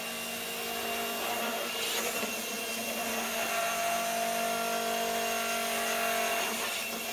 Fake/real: real